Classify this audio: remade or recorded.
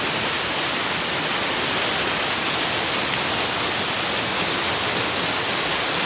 recorded